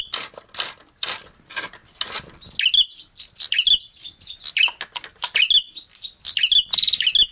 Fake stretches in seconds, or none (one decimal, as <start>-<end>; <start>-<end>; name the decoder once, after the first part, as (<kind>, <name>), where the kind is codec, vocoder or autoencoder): none